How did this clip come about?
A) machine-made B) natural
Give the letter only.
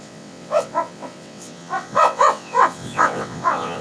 A